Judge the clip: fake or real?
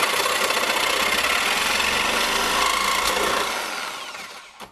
real